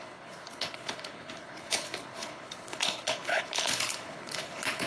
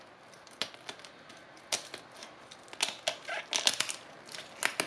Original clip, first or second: second